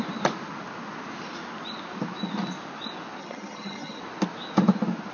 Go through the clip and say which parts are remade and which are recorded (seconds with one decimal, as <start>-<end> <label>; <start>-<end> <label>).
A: 0.0-3.2 recorded; 3.2-4.0 remade; 4.0-5.1 recorded